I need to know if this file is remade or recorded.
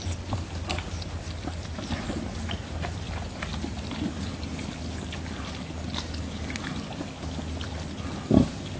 recorded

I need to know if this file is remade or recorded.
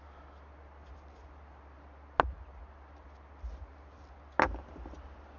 recorded